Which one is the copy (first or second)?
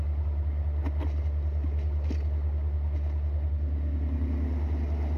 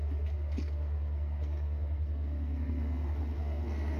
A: second